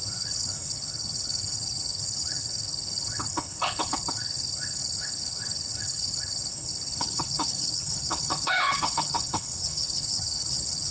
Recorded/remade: remade